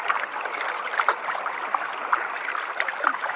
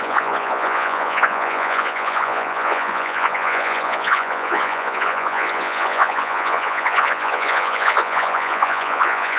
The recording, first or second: first